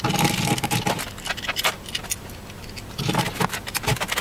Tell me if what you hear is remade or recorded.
recorded